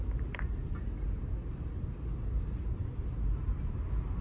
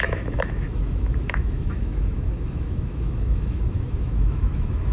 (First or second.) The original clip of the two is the first